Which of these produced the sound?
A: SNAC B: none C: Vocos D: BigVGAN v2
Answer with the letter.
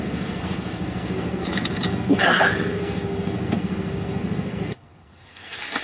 A